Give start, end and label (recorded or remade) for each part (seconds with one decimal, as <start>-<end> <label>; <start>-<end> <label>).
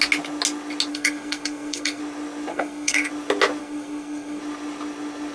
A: 0.0-0.9 recorded; 0.9-2.0 remade; 2.0-2.5 recorded; 2.5-3.1 remade; 3.1-3.6 recorded; 3.6-4.4 remade; 4.4-5.3 recorded